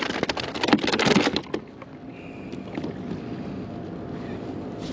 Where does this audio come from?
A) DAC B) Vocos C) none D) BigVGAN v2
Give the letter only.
C